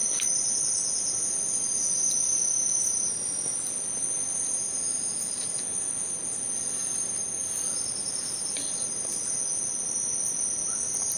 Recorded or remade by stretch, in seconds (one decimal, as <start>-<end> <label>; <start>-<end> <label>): 0.0-11.2 recorded